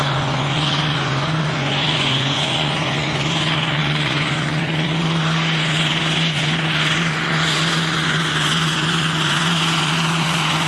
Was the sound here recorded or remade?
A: remade